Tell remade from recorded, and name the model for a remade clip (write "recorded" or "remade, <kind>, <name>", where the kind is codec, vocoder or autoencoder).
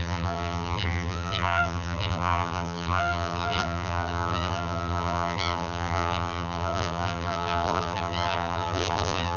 remade, vocoder, BigVGAN v2